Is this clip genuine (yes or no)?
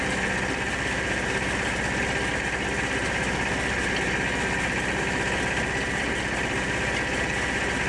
yes